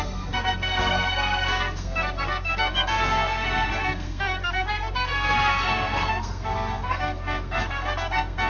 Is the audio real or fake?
fake